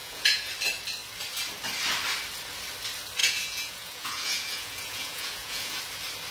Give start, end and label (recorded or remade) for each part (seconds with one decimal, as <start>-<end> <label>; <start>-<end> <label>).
0.0-0.5 remade; 0.5-3.2 recorded; 3.2-5.8 remade; 5.8-6.3 recorded